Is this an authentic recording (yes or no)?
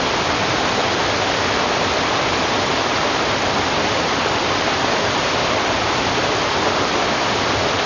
no